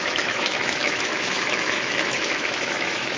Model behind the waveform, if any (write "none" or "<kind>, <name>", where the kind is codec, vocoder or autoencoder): autoencoder, DAC-VAE